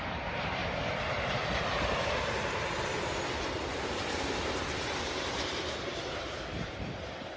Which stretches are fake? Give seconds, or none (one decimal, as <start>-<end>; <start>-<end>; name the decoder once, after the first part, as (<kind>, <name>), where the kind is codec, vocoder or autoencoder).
0.0-0.6 (vocoder, BigVGAN v2); 1.3-7.4